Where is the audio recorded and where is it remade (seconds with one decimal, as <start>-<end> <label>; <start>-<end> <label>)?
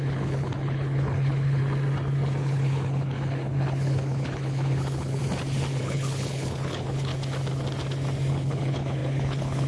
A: 0.0-1.6 remade; 1.6-2.4 recorded; 2.4-5.2 remade; 5.2-5.8 recorded; 5.8-7.1 remade; 7.1-8.3 recorded; 8.3-9.7 remade